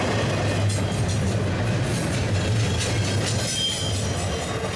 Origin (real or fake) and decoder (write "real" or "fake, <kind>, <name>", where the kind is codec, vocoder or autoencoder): real